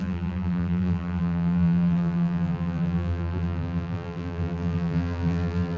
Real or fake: fake